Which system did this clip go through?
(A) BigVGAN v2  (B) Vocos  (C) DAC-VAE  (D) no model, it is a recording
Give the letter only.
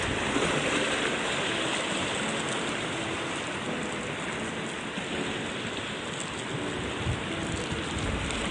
D